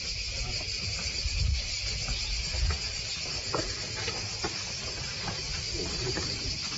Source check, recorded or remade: recorded